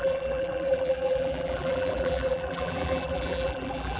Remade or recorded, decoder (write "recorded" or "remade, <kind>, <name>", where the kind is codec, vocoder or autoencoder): remade, vocoder, BigVGAN v2